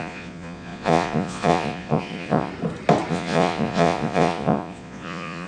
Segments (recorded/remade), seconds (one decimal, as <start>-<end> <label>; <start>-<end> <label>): 0.0-2.5 remade; 2.5-3.1 recorded; 3.1-5.5 remade